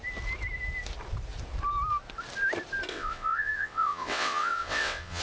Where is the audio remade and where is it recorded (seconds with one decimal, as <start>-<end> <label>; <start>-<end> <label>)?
0.0-2.9 recorded; 2.9-5.2 remade